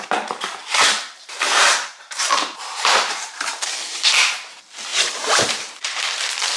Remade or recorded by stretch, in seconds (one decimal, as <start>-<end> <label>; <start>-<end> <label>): 0.0-0.6 recorded; 0.6-4.3 remade; 4.3-4.9 recorded; 4.9-6.0 remade; 6.0-6.6 recorded